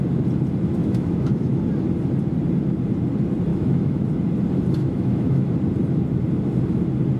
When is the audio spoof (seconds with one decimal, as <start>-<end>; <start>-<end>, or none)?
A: 0.8-1.6; 3.5-4.0; 4.8-5.5